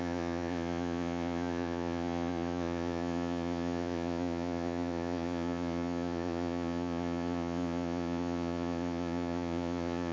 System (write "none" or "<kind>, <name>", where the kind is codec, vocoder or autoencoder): vocoder, Vocos